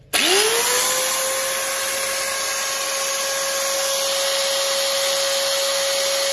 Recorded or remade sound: recorded